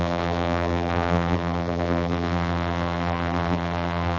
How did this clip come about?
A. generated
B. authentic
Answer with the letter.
A